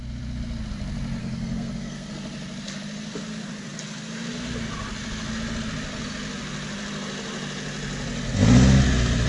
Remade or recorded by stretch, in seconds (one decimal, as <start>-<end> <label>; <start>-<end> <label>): 0.0-1.2 recorded; 1.2-2.1 remade; 2.1-9.3 recorded